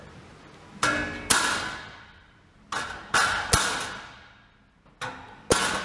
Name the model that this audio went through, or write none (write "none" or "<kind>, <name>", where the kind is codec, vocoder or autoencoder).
none